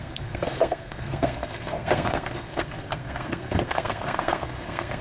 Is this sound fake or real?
fake